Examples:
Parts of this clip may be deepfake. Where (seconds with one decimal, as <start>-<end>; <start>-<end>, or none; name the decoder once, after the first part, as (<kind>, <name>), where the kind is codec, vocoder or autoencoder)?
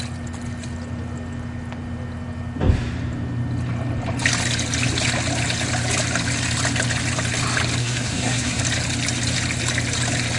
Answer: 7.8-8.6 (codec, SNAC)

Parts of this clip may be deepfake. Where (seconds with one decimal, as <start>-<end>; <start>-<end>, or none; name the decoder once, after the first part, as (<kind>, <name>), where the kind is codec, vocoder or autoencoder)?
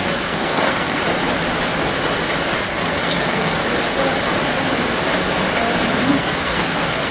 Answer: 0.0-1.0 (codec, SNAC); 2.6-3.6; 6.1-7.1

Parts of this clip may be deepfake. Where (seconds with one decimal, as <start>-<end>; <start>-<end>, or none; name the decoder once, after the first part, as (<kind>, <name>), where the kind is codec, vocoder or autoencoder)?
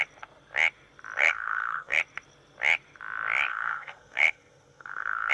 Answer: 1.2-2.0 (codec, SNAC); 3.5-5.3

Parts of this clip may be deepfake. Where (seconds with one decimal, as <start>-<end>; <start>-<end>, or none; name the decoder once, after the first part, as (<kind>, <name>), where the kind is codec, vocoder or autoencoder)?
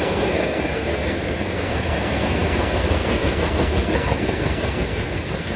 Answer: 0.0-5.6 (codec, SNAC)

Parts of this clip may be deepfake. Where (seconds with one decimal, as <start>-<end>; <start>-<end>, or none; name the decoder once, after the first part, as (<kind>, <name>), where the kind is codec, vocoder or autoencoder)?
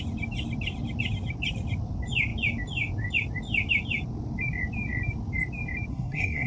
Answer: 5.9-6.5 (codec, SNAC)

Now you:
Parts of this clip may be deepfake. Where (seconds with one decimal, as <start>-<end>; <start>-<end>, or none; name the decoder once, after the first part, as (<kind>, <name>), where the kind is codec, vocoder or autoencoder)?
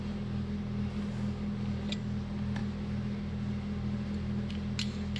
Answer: none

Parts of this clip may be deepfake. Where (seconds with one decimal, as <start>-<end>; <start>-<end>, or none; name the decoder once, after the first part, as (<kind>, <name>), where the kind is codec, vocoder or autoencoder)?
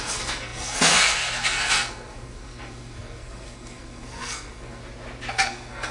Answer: 0.0-4.8 (codec, SNAC); 5.3-5.9